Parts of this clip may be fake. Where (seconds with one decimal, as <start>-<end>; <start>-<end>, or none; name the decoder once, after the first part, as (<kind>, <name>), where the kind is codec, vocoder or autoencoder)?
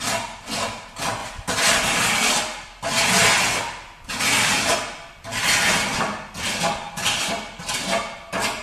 1.2-2.3 (vocoder, BigVGAN v2); 5.7-6.3